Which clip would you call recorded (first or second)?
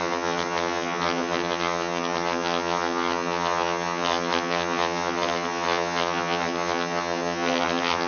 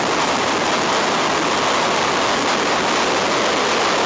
second